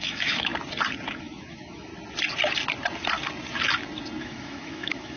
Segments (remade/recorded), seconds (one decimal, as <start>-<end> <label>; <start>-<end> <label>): 0.0-0.5 remade; 0.5-1.2 recorded; 1.2-1.9 remade; 1.9-4.2 recorded; 4.2-5.2 remade